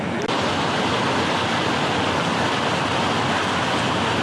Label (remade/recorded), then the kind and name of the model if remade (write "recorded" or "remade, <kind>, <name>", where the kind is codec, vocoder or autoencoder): recorded